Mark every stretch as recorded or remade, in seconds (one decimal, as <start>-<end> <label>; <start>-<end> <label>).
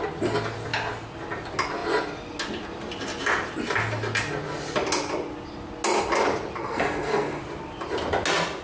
0.0-6.6 recorded; 6.6-7.4 remade; 7.4-8.6 recorded